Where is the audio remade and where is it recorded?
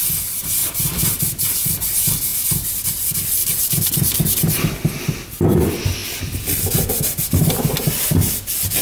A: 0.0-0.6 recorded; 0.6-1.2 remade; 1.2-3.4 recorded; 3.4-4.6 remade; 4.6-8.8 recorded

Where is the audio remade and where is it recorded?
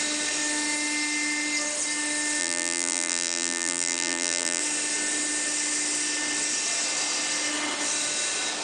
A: 0.0-2.4 recorded; 2.4-4.6 remade; 4.6-8.6 recorded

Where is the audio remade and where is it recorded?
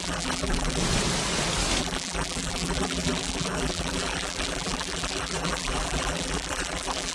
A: 0.0-0.8 remade; 0.8-1.8 recorded; 1.8-7.1 remade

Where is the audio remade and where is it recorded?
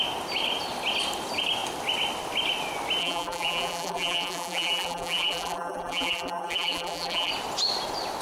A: 0.0-3.0 recorded; 3.0-7.3 remade; 7.3-8.2 recorded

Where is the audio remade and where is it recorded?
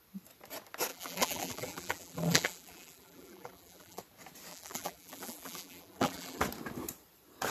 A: 0.0-0.9 recorded; 0.9-4.0 remade; 4.0-4.5 recorded; 4.5-6.4 remade; 6.4-7.5 recorded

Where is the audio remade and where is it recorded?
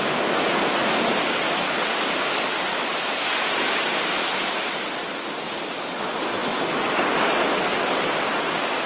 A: 0.0-8.9 recorded